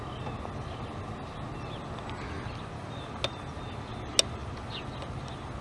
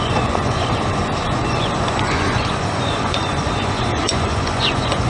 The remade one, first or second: second